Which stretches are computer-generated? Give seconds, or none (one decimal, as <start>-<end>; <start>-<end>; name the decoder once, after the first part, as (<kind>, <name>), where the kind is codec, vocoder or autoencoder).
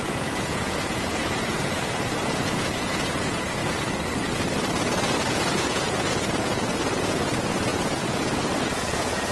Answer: 0.0-3.6 (vocoder, Vocos); 5.3-9.3